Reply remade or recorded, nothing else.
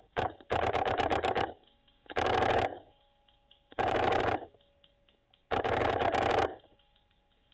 remade